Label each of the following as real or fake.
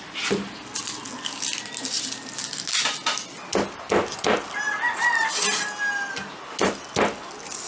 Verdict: real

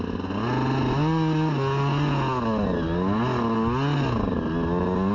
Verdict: real